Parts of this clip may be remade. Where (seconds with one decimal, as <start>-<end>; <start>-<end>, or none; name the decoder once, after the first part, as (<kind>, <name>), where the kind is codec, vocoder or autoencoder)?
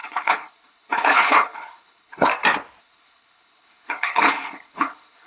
0.0-2.3 (codec, HILCodec); 2.8-5.3